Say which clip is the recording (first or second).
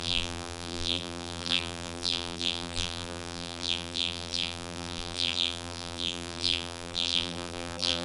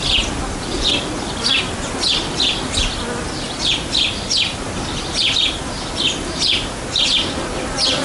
second